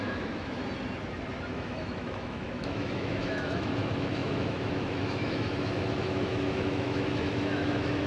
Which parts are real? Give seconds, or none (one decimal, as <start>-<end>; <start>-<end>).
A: 0.6-1.4